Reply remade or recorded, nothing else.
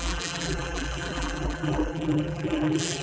remade